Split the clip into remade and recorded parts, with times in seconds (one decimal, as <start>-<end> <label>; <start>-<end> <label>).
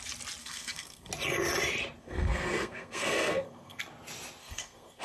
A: 0.0-0.4 recorded; 0.4-1.1 remade; 1.1-2.0 recorded; 2.0-3.8 remade; 3.8-4.4 recorded; 4.4-5.0 remade